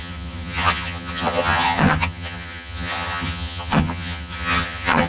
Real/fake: fake